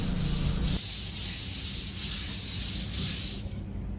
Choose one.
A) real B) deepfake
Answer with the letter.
A